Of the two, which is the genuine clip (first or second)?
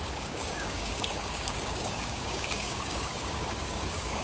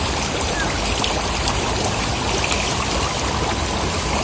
second